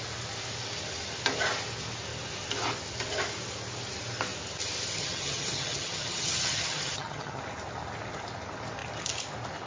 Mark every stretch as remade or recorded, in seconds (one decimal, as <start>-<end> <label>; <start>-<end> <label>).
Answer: 0.0-5.0 recorded; 5.0-7.4 remade; 7.4-9.7 recorded